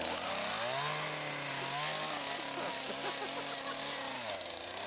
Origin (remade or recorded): recorded